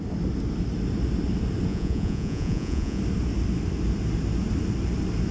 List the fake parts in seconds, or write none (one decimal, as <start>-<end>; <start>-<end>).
1.7-3.0